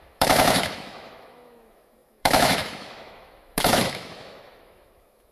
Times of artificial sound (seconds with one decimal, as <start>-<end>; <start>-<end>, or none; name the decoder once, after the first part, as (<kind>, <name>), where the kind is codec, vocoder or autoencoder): 0.0-5.3 (autoencoder, DAC-VAE)